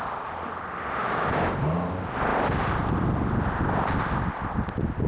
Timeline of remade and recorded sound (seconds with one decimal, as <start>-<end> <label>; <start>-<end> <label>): 0.0-1.0 recorded; 1.0-1.5 remade; 1.5-5.1 recorded